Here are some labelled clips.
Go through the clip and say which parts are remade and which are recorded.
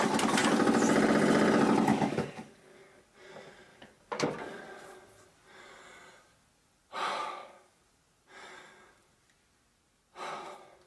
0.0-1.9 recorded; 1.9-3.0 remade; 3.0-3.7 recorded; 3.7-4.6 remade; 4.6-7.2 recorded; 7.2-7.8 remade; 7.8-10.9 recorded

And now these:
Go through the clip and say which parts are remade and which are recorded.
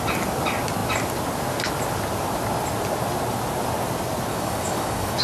0.0-4.3 recorded; 4.3-5.2 remade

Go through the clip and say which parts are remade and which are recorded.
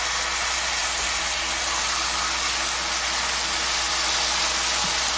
0.0-5.2 recorded